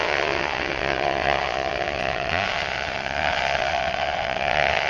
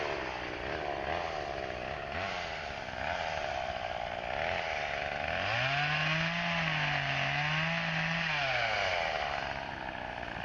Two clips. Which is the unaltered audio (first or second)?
second